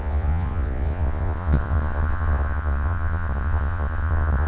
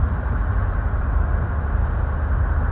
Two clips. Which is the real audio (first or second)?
second